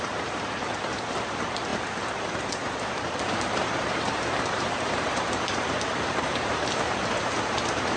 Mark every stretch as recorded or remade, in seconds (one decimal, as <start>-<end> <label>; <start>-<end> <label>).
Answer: 0.0-8.0 remade